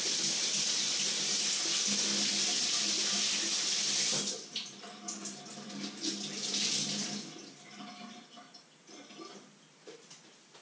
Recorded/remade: recorded